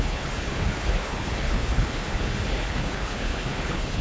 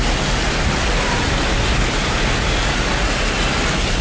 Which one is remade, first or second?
first